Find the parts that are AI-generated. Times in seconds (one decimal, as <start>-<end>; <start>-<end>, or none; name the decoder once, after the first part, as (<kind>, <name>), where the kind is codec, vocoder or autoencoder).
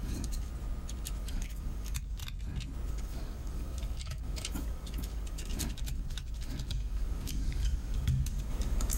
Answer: 0.0-0.5 (codec, DAC); 1.2-2.2; 2.9-9.0